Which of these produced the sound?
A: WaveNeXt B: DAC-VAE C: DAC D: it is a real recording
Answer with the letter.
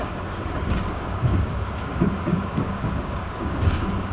C